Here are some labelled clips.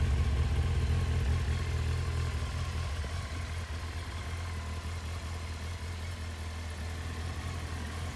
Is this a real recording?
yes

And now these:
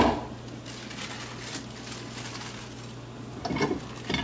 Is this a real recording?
yes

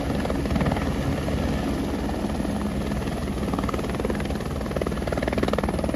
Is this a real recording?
yes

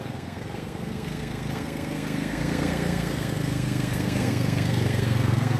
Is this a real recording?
no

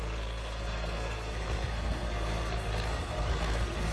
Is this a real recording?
no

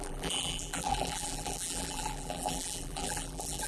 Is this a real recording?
no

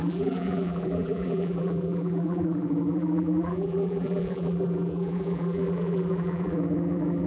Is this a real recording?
no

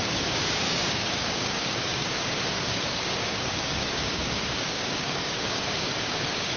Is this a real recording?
no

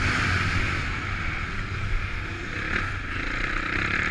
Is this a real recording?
yes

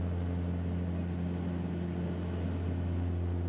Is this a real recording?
yes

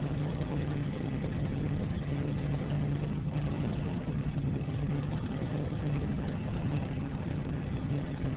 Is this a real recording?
no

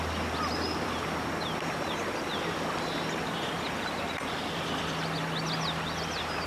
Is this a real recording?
yes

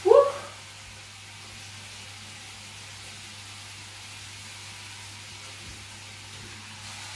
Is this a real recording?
yes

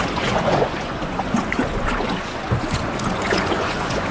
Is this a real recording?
no